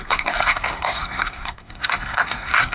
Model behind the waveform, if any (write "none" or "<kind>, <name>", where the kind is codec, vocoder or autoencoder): codec, SNAC